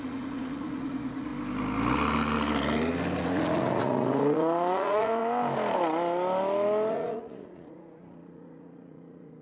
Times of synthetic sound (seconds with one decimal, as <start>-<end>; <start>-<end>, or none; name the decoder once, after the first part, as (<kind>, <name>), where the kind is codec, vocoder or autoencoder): 0.0-1.3 (vocoder, Vocos); 3.2-5.2; 6.9-9.4